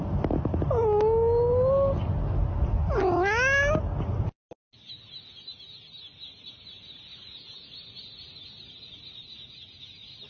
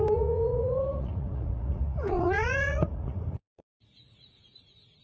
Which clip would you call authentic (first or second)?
first